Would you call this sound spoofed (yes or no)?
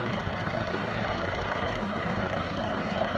yes